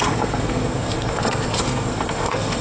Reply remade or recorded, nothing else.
remade